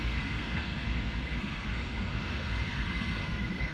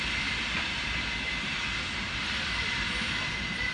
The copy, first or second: first